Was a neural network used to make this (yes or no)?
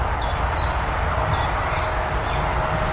no